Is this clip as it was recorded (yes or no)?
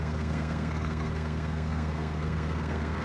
no